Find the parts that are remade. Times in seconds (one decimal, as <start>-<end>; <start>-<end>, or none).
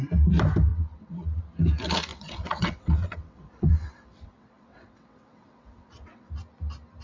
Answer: 0.7-1.4; 2.1-6.3